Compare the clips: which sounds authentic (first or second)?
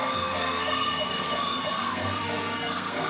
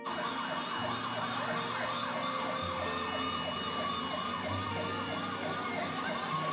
second